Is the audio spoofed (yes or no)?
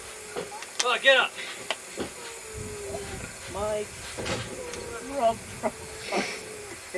no